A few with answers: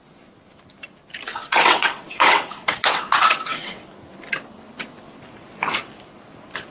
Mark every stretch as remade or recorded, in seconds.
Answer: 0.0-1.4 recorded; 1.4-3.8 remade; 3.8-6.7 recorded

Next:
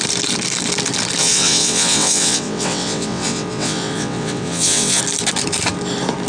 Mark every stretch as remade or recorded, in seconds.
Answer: 0.0-1.2 recorded; 1.2-5.0 remade; 5.0-6.3 recorded

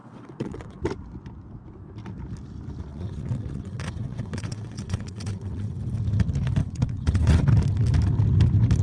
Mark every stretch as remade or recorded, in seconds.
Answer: 0.0-0.8 remade; 0.8-2.9 recorded; 2.9-5.7 remade; 5.7-6.6 recorded; 6.6-7.4 remade; 7.4-8.8 recorded

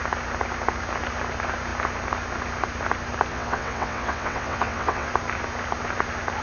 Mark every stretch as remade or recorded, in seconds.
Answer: 0.0-3.3 recorded; 3.3-5.1 remade; 5.1-6.4 recorded

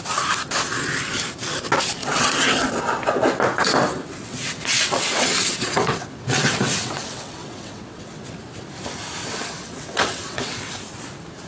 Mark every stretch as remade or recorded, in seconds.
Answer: 0.0-2.0 recorded; 2.0-2.7 remade; 2.7-4.2 recorded; 4.2-8.4 remade; 8.4-9.2 recorded; 9.2-10.8 remade; 10.8-11.5 recorded

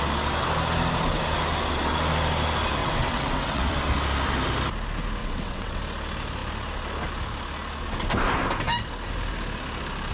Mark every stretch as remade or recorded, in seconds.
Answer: 0.0-2.8 recorded; 2.8-3.7 remade; 3.7-5.2 recorded; 5.2-5.8 remade; 5.8-10.1 recorded

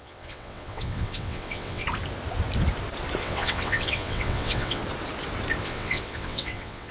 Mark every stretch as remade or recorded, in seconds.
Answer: 0.0-1.8 remade; 1.8-3.2 recorded; 3.2-4.8 remade; 4.8-5.6 recorded; 5.6-6.9 remade

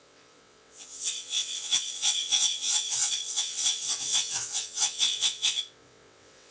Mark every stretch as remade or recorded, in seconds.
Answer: 0.0-6.5 remade